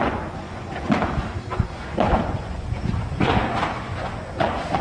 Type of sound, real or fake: fake